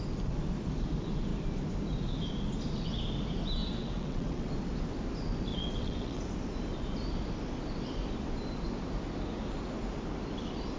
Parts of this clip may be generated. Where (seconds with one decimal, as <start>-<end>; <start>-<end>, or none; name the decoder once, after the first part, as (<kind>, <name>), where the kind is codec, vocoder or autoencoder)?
3.6-4.5 (vocoder, WaveNeXt); 5.5-6.2